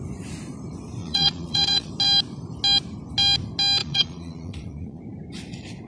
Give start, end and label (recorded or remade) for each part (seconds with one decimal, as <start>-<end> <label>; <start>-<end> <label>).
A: 0.0-1.0 recorded; 1.0-1.9 remade; 1.9-3.8 recorded; 3.8-5.0 remade; 5.0-5.9 recorded